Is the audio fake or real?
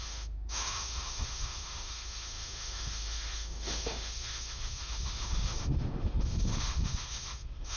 fake